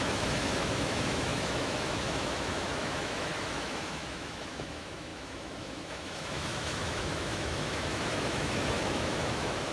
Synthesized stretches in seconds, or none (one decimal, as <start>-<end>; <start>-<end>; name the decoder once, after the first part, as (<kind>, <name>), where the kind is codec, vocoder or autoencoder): 0.0-9.7 (autoencoder, DAC-VAE)